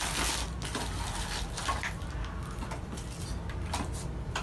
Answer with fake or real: real